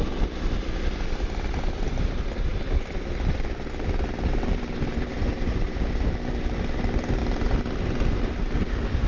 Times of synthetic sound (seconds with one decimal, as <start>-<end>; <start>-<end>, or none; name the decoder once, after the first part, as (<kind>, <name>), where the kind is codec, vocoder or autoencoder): 5.2-5.8 (vocoder, BigVGAN v2)